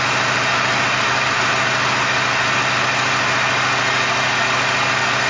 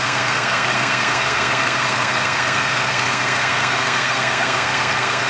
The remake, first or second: second